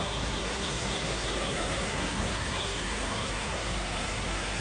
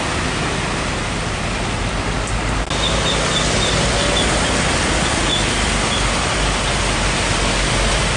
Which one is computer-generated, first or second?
first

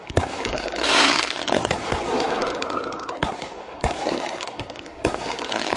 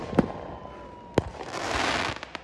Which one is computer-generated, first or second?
first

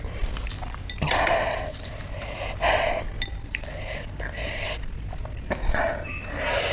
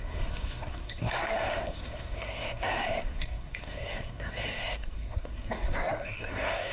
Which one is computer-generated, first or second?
second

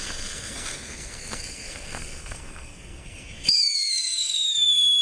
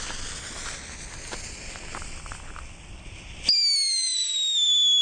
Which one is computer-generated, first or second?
first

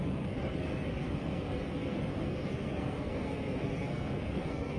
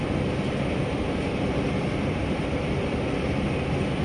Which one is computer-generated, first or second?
first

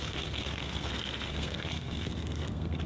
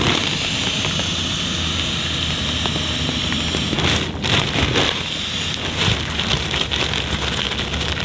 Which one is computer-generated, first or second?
first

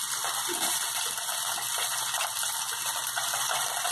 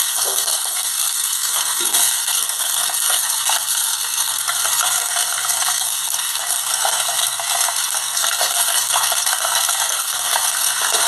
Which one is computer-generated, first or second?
second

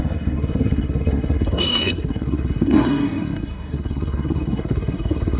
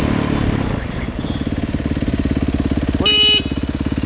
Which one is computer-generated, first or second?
first